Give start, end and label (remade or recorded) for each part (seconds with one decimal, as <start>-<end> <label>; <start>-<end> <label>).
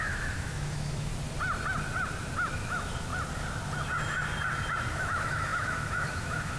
0.0-1.1 remade; 1.1-2.5 recorded; 2.5-3.1 remade; 3.1-4.9 recorded; 4.9-6.6 remade